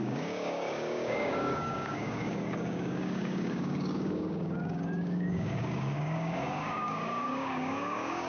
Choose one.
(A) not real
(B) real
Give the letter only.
A